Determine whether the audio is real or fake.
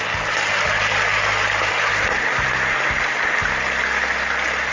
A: real